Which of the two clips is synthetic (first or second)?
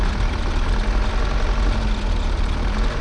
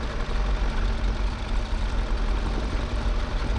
second